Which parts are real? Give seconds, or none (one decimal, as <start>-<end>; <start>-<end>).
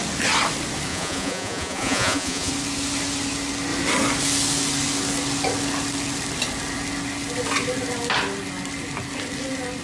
0.0-0.9; 2.5-9.8